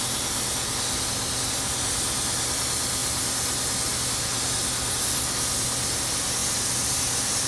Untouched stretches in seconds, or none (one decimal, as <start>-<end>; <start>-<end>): 0.0-7.5